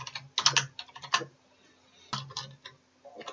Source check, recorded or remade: recorded